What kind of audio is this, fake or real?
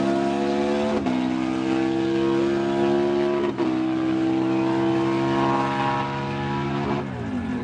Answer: real